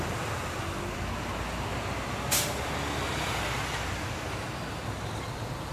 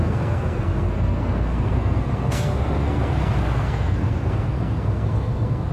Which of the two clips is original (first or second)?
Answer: first